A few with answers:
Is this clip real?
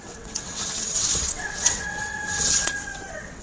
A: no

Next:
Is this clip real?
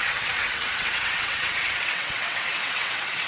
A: no